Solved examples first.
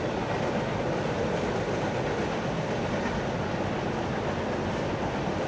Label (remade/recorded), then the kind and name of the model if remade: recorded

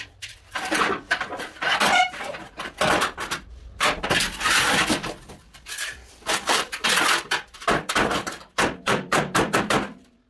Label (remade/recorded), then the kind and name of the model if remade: remade, vocoder, BigVGAN v2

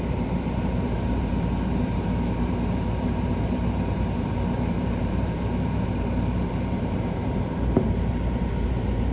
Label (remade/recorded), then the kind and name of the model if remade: remade, vocoder, BigVGAN v2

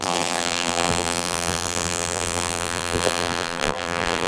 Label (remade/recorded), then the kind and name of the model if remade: remade, vocoder, BigVGAN v2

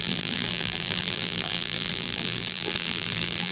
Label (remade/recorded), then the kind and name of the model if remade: remade, vocoder, BigVGAN v2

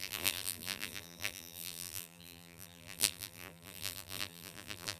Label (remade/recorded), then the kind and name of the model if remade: remade, vocoder, BigVGAN v2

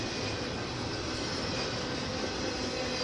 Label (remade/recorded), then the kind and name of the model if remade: recorded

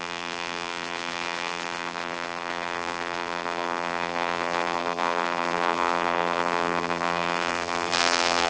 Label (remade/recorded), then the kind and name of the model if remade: remade, vocoder, BigVGAN v2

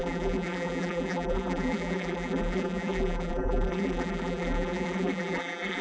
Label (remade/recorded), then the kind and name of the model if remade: remade, vocoder, BigVGAN v2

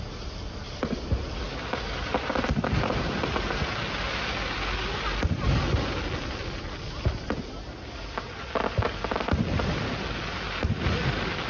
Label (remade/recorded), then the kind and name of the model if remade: recorded